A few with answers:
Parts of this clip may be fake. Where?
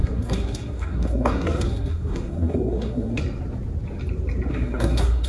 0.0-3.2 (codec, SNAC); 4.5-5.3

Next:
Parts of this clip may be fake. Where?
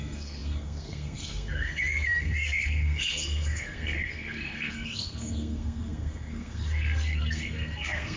0.0-8.2 (codec, SNAC)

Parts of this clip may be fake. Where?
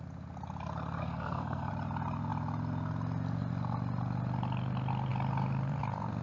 1.0-1.7 (codec, SNAC)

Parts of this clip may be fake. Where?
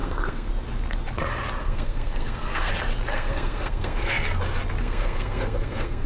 0.0-0.5 (codec, SNAC); 1.6-2.7; 3.1-4.2; 4.8-6.1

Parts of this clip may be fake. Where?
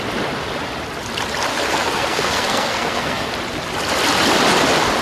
1.5-3.3 (codec, SNAC)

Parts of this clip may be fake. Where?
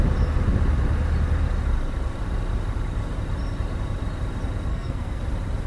4.7-5.2 (codec, SNAC)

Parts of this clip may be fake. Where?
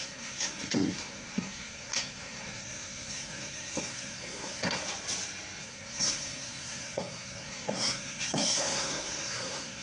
0.0-4.8 (codec, SNAC); 5.6-9.8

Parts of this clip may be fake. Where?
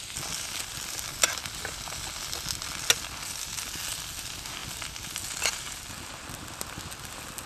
none